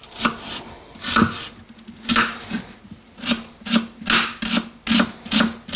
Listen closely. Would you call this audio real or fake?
real